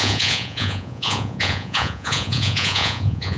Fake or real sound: fake